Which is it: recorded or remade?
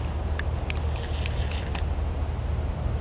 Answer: recorded